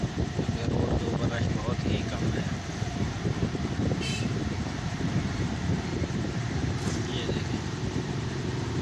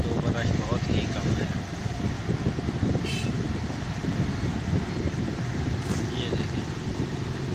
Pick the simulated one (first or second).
first